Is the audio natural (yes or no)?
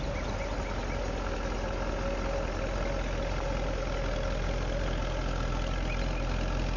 yes